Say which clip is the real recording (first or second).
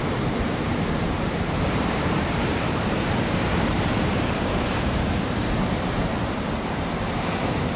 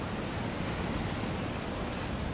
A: second